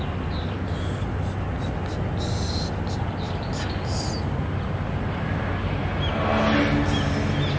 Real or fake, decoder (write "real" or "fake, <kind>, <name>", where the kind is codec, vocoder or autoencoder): real